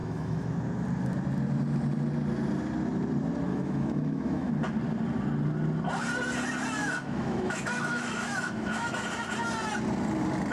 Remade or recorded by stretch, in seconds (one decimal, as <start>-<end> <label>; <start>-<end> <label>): 0.0-0.5 remade; 0.5-3.5 recorded; 3.5-4.5 remade; 4.5-6.8 recorded; 6.8-9.0 remade; 9.0-10.5 recorded